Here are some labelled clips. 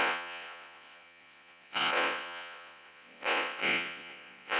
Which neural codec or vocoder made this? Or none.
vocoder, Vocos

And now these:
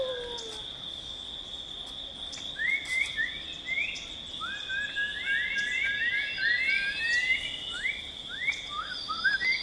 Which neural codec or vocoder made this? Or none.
none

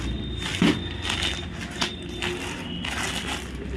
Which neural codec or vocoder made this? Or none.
none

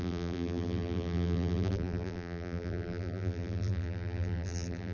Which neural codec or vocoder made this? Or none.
vocoder, BigVGAN v2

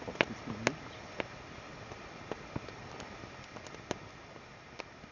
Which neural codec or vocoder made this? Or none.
none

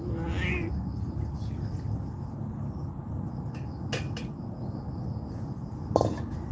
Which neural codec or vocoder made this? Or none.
none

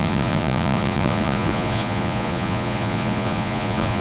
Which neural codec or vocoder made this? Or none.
vocoder, Vocos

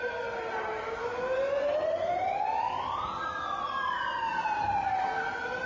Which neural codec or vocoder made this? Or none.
none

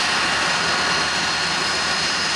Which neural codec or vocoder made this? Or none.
none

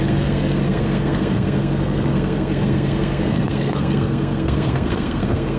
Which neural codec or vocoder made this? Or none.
codec, SNAC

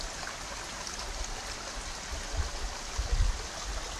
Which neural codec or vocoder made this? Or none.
none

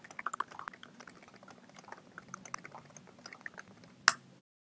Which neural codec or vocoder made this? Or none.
none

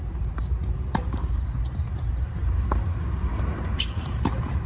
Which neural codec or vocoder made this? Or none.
vocoder, BigVGAN v2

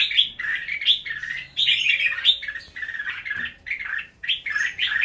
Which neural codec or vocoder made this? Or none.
none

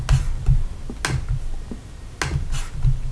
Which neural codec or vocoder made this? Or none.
none